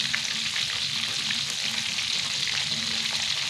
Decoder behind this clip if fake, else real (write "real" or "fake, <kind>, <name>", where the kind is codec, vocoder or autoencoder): real